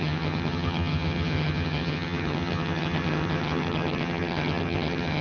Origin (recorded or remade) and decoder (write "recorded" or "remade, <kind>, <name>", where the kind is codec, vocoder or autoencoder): remade, vocoder, HiFi-GAN